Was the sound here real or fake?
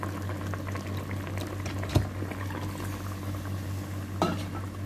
real